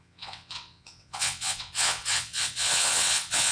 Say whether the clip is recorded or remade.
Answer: remade